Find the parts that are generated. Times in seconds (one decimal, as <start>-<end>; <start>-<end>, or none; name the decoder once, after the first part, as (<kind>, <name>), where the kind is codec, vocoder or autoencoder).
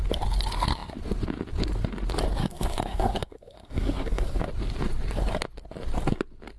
2.4-4.4 (codec, SNAC)